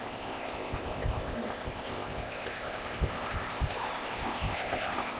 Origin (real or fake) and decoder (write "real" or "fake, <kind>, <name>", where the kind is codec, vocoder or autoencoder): fake, codec, ZipCodec